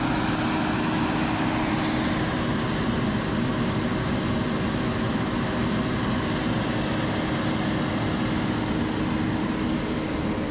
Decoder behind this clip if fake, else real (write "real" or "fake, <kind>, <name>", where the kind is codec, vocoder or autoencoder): real